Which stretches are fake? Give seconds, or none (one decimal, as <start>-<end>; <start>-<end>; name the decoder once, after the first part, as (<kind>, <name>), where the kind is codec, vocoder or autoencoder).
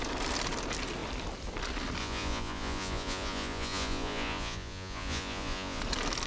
2.0-5.8 (vocoder, Vocos)